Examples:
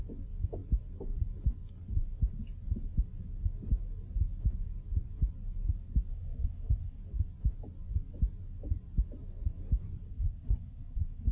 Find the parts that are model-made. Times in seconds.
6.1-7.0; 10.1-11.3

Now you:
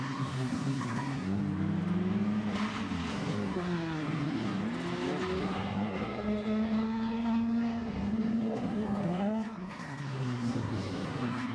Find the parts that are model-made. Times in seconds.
0.0-1.4; 3.1-4.6; 5.4-11.5

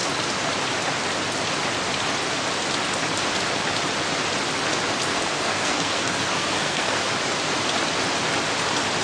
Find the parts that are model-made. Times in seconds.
5.1-7.1

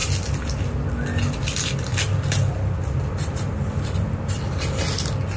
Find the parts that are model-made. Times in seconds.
none